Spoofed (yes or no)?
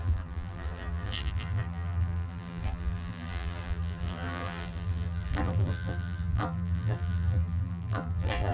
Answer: yes